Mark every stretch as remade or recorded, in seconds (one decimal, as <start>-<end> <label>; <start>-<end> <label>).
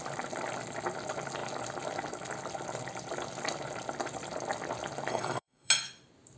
0.0-5.1 recorded; 5.1-5.7 remade; 5.7-6.4 recorded